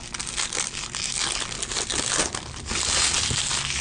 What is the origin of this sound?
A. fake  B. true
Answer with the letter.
B